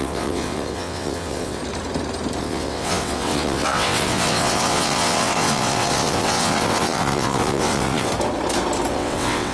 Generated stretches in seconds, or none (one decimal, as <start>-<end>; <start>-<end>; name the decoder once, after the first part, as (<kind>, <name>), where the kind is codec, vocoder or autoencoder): 0.0-1.6 (vocoder, WaveNeXt); 2.4-8.1; 8.9-9.5